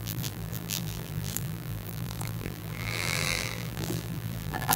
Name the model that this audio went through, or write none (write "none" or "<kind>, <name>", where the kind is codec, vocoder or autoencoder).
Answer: vocoder, BigVGAN v2